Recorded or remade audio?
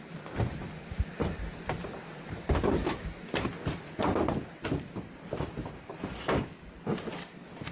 recorded